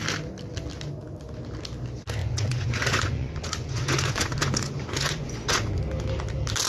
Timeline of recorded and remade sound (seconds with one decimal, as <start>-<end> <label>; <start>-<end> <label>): 0.0-2.2 recorded; 2.2-5.8 remade; 5.8-6.7 recorded